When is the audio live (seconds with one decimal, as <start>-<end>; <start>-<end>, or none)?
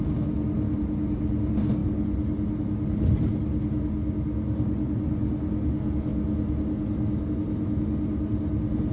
0.0-8.9